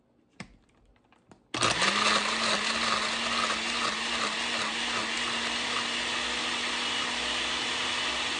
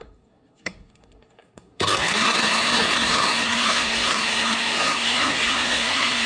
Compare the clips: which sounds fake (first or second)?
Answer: second